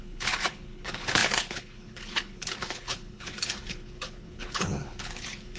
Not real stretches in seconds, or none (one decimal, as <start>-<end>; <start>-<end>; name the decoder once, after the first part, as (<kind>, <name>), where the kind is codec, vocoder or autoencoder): 0.0-5.6 (codec, HILCodec)